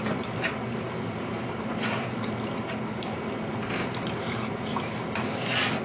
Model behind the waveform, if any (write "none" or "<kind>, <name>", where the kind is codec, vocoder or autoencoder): none